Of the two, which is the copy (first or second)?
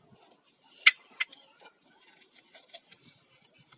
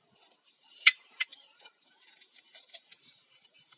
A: second